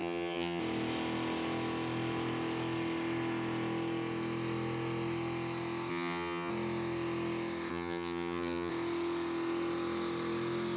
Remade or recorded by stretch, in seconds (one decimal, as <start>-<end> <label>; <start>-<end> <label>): 0.0-0.6 remade; 0.6-5.9 recorded; 5.9-6.5 remade; 6.5-7.7 recorded; 7.7-8.7 remade; 8.7-10.8 recorded